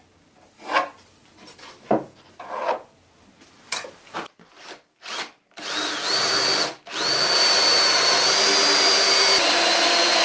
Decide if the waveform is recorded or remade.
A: recorded